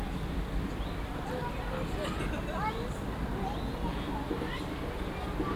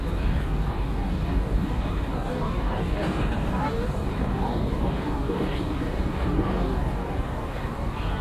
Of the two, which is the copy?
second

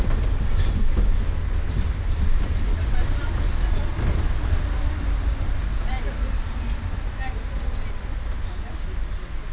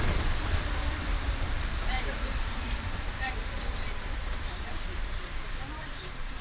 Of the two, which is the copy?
second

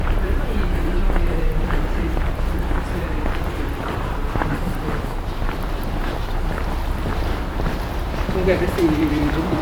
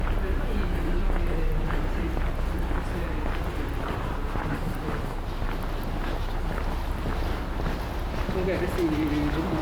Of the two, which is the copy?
first